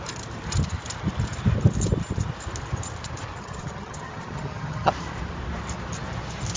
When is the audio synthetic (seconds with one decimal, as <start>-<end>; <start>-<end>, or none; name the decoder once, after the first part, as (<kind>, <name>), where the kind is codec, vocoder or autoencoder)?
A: 3.4-4.9 (vocoder, HiFi-GAN)